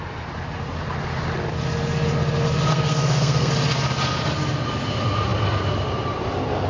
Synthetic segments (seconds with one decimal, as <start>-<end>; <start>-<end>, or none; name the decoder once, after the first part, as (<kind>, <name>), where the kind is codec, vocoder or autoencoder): 2.7-3.5 (codec, SNAC)